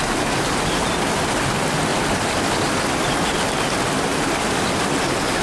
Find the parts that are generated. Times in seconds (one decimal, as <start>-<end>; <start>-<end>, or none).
1.9-3.0; 4.1-4.9